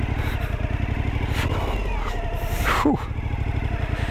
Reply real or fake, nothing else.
real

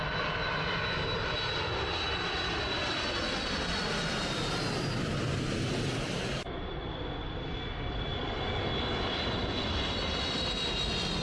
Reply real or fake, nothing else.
real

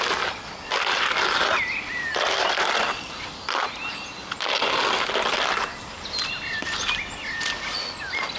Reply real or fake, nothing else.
real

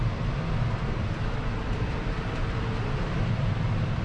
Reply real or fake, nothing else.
fake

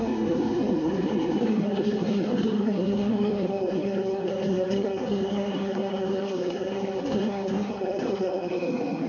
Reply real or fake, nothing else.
fake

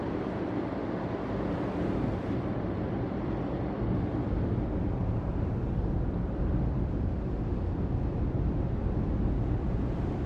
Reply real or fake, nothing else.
fake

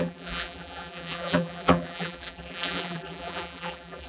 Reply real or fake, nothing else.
fake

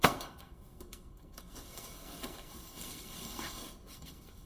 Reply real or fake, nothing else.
fake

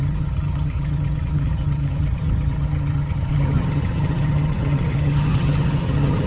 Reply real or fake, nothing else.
fake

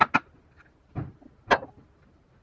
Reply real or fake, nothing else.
real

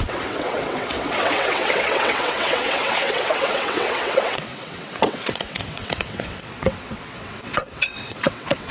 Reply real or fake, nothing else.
fake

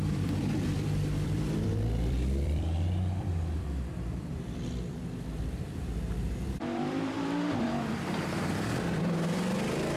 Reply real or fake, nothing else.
fake